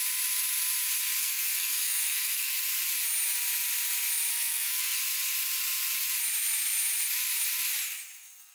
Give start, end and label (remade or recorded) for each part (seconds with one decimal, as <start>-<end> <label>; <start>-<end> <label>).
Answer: 0.0-1.2 recorded; 1.2-2.6 remade; 2.6-4.3 recorded; 4.3-5.0 remade; 5.0-8.5 recorded